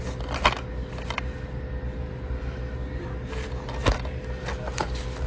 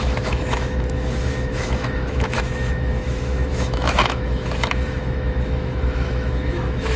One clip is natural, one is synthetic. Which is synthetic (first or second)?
second